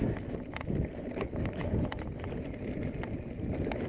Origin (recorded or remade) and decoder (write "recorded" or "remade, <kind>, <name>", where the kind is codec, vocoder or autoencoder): recorded